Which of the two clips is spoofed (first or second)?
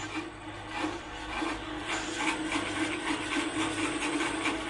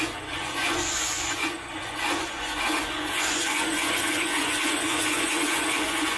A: second